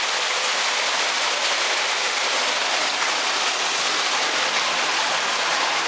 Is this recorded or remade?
recorded